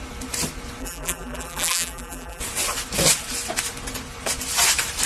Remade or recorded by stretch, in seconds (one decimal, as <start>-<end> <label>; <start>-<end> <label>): 0.0-0.8 recorded; 0.8-2.4 remade; 2.4-5.1 recorded